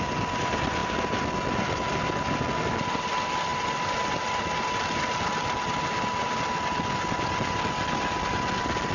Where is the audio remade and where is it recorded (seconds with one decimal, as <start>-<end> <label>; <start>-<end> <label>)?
0.0-8.9 recorded